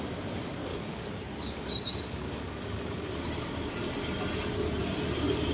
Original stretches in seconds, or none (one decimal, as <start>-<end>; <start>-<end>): 0.0-0.7; 3.1-5.5